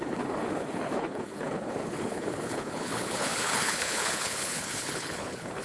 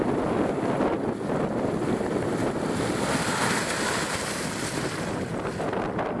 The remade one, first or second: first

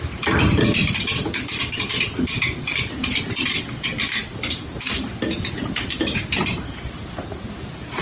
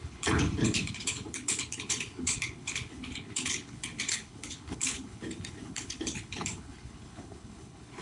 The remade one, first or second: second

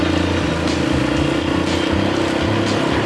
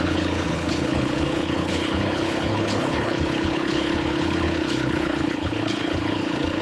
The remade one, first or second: second